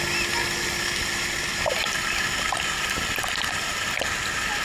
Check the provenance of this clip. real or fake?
real